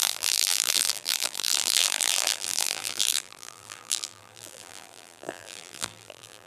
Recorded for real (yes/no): no